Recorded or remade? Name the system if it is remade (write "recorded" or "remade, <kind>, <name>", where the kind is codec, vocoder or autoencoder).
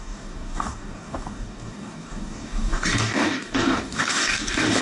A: remade, codec, DAC